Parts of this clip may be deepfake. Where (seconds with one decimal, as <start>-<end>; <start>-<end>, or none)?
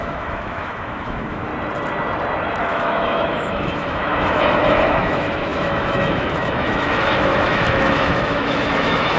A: 0.0-1.5; 2.6-9.2